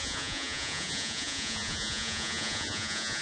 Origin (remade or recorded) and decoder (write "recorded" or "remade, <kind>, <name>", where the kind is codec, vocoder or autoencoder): remade, vocoder, Vocos